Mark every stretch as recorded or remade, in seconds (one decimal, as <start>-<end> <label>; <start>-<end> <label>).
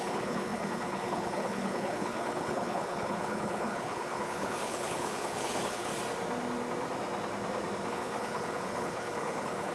0.0-5.9 remade; 5.9-7.9 recorded; 7.9-9.7 remade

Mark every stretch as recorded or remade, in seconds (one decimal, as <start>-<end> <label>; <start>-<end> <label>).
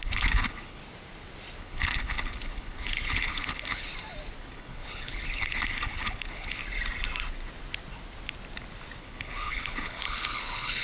0.0-0.8 remade; 0.8-1.6 recorded; 1.6-3.9 remade; 3.9-4.4 recorded; 4.4-6.6 remade; 6.6-9.0 recorded; 9.0-10.8 remade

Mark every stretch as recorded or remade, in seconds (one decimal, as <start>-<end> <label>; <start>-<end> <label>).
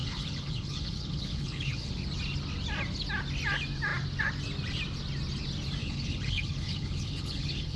0.0-1.9 remade; 1.9-5.8 recorded; 5.8-7.8 remade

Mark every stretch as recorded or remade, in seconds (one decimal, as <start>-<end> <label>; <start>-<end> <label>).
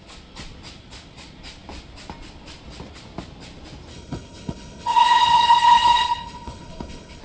0.0-3.9 recorded; 3.9-7.2 remade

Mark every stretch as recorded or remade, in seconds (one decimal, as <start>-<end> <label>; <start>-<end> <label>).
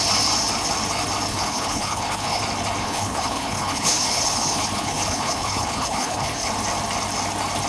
0.0-1.3 recorded; 1.3-2.4 remade; 2.4-2.8 recorded; 2.8-6.5 remade; 6.5-7.7 recorded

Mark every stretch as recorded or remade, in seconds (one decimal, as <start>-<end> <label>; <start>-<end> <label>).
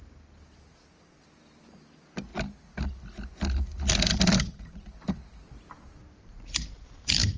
0.0-7.4 recorded